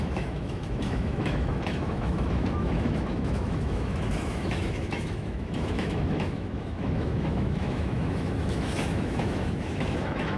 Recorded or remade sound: remade